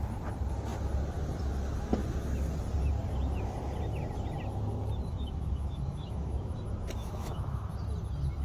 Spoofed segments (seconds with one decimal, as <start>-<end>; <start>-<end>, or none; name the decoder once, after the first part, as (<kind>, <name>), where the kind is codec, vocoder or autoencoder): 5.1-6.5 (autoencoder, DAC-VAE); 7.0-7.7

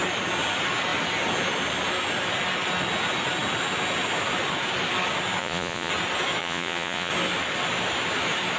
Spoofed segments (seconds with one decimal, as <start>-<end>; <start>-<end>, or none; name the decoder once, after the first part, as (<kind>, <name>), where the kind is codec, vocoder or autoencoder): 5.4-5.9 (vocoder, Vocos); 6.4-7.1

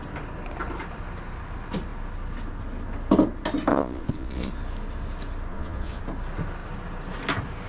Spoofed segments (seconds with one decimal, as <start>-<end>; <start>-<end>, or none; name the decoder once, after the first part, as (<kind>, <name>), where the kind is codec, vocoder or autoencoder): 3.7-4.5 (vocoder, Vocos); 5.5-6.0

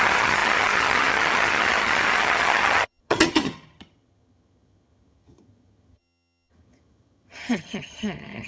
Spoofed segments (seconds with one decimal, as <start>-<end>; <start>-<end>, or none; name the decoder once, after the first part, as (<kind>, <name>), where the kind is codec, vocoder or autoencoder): 0.0-8.5 (vocoder, HiFi-GAN)

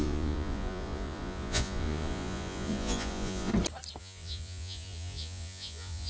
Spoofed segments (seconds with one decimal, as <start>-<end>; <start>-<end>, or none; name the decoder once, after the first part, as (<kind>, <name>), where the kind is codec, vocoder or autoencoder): 0.0-3.5 (vocoder, Vocos); 4.0-6.1

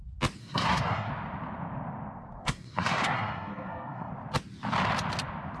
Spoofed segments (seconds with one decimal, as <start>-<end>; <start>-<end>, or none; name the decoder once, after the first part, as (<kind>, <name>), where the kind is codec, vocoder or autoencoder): 0.4-1.1 (codec, SNAC); 2.4-4.1

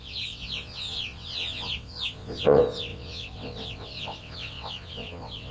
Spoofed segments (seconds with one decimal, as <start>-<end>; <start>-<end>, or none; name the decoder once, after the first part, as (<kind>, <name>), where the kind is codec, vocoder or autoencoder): 0.0-5.5 (vocoder, WaveNeXt)